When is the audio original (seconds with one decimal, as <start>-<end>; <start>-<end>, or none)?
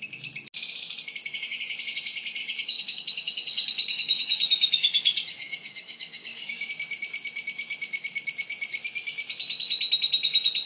0.0-1.2; 1.8-2.4; 6.7-10.7